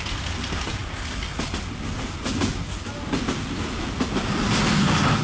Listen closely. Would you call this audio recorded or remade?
recorded